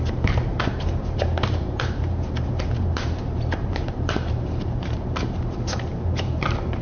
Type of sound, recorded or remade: remade